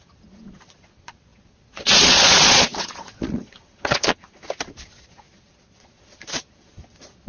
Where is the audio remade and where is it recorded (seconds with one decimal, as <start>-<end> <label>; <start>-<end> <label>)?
0.0-4.4 remade; 4.4-5.0 recorded; 5.0-7.3 remade